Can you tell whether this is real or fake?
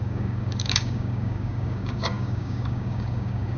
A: fake